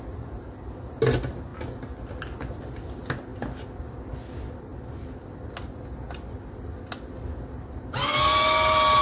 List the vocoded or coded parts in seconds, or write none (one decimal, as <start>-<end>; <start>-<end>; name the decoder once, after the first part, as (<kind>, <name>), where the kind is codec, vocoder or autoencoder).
none